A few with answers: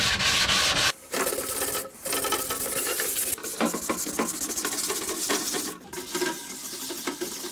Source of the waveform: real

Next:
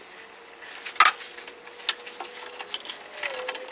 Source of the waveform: real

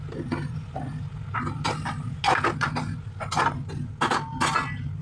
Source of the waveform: real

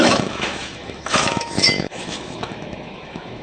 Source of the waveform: fake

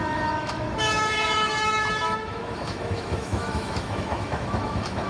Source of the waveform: fake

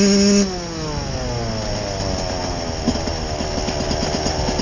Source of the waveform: real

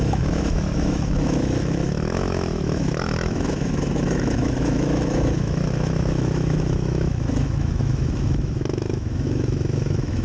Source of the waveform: fake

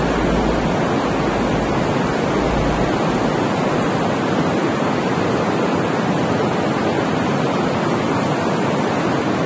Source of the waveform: real